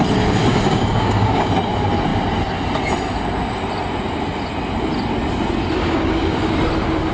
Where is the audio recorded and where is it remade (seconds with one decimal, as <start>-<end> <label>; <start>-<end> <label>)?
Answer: 0.0-0.5 recorded; 0.5-1.5 remade; 1.5-5.8 recorded; 5.8-6.5 remade; 6.5-7.1 recorded